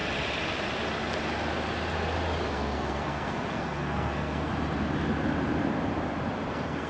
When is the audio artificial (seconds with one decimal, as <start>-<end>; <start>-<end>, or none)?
2.5-4.5; 6.5-6.9